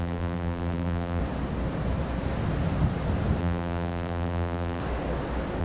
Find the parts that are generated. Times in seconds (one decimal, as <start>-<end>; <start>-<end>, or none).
0.0-1.2; 3.4-4.8